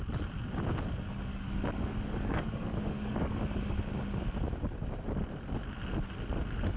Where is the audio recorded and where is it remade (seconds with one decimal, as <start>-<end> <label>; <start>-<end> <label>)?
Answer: 0.0-1.3 recorded; 1.3-3.4 remade; 3.4-6.8 recorded